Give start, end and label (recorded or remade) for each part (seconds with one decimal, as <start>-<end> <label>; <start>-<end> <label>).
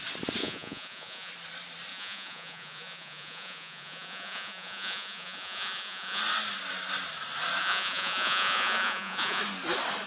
0.0-0.4 recorded; 0.4-1.3 remade; 1.3-1.9 recorded; 1.9-6.2 remade; 6.2-7.6 recorded; 7.6-9.4 remade; 9.4-10.1 recorded